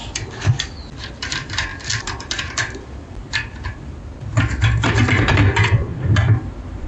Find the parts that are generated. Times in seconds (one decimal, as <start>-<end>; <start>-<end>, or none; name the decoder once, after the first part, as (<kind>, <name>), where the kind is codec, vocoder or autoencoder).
1.7-4.4 (vocoder, BigVGAN v2); 5.9-6.9